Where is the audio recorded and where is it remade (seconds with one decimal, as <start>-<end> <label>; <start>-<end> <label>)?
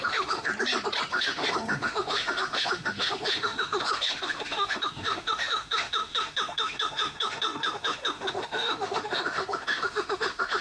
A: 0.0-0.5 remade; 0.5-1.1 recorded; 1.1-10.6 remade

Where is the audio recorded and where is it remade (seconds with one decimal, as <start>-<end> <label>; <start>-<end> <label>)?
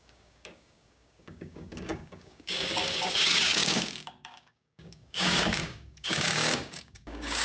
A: 0.0-7.4 remade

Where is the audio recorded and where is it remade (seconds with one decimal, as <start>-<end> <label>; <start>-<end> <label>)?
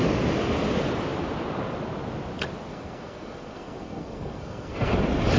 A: 0.0-2.7 recorded; 2.7-4.9 remade; 4.9-5.4 recorded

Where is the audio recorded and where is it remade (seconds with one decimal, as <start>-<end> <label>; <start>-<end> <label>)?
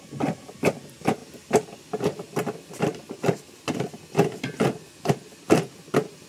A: 0.0-6.3 recorded